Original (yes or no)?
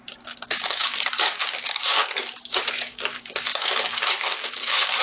no